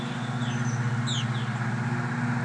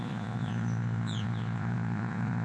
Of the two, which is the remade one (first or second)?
second